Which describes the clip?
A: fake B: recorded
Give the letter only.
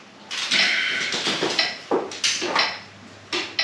B